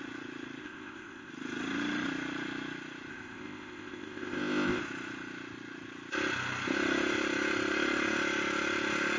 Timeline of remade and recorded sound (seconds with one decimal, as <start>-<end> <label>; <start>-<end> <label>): 0.0-0.6 recorded; 0.6-1.3 remade; 1.3-3.1 recorded; 3.1-4.8 remade; 4.8-9.2 recorded